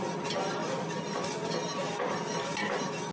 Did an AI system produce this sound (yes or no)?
no